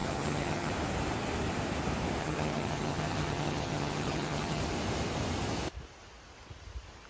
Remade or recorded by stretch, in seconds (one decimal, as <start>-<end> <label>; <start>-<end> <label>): 0.0-0.7 remade; 0.7-2.2 recorded; 2.2-4.6 remade; 4.6-7.1 recorded